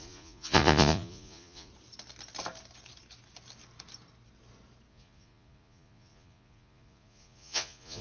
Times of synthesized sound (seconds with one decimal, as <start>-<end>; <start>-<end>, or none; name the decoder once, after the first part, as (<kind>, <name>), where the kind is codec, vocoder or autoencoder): 0.0-1.7 (vocoder, Vocos); 4.9-8.0